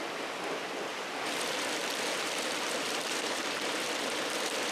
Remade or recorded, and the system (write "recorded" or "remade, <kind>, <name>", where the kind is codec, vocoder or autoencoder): remade, vocoder, BigVGAN v2